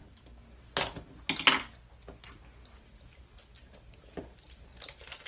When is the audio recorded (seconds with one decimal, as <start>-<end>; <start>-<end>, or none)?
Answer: 0.0-5.3